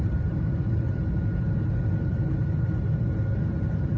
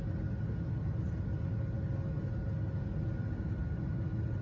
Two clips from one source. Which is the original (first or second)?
second